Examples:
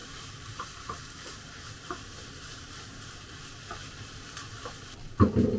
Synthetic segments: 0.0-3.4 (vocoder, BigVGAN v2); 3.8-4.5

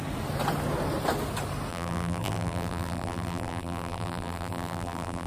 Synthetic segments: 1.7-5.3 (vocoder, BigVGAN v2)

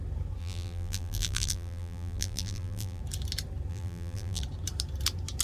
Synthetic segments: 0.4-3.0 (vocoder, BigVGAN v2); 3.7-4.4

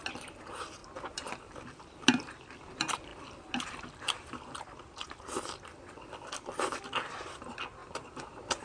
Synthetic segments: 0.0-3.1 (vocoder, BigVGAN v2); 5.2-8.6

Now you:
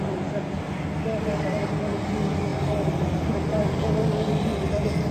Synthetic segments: none

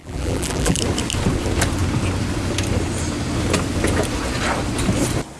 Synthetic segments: 0.0-0.8 (vocoder, BigVGAN v2)

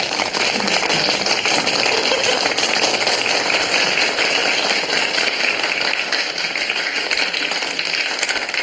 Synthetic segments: none